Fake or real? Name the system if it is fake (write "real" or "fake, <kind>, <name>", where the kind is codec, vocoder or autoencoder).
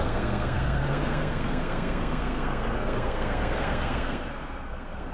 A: fake, codec, SNAC